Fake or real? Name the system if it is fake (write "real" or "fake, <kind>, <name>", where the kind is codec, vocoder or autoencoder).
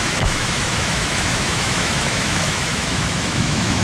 fake, autoencoder, DAC-VAE